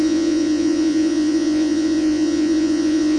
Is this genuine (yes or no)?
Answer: no